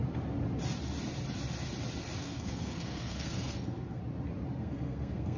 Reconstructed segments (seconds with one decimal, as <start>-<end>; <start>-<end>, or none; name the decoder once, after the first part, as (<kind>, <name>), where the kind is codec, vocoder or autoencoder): 2.2-4.0 (codec, SNAC); 4.6-5.4